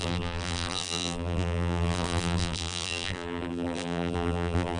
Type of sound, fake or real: fake